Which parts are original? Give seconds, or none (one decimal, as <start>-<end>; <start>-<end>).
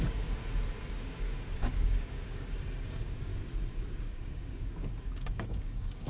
0.4-1.0; 3.3-4.0